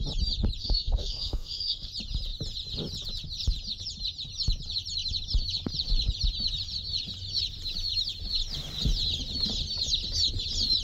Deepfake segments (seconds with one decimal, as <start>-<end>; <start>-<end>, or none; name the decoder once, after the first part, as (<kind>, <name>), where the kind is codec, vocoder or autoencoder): 0.6-1.9 (codec, SNAC)